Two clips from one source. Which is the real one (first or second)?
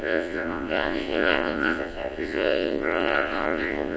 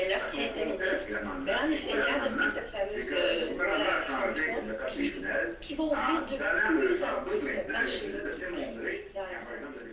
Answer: second